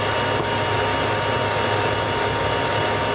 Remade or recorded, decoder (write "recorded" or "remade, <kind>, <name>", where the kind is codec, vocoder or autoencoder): recorded